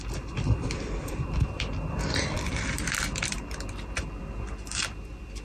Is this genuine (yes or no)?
no